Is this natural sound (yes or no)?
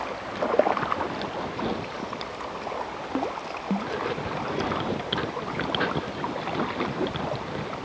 yes